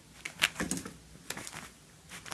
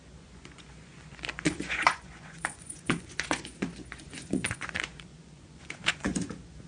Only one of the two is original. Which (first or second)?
first